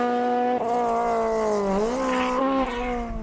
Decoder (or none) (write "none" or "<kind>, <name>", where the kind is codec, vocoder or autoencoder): none